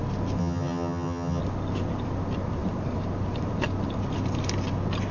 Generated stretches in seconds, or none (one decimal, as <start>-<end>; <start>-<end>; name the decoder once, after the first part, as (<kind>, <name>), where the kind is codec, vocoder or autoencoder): 0.4-1.4 (vocoder, HiFi-GAN)

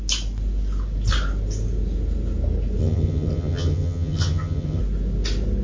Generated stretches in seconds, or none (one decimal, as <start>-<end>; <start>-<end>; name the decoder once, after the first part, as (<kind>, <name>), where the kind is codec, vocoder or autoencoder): 2.8-4.8 (vocoder, HiFi-GAN)

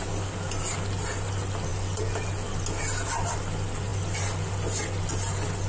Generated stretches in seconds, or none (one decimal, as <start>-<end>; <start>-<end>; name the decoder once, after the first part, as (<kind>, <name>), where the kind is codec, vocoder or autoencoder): none

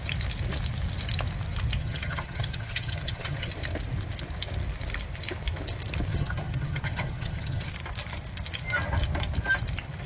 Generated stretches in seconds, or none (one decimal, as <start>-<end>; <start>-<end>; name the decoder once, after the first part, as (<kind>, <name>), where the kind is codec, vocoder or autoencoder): 1.8-3.5 (vocoder, HiFi-GAN); 6.1-7.7

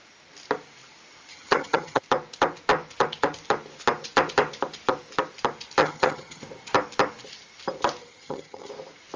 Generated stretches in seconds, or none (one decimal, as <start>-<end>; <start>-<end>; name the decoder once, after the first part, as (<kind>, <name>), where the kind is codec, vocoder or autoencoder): 1.3-2.0 (vocoder, HiFi-GAN); 5.8-6.4; 8.0-8.7